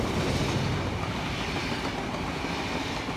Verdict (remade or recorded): recorded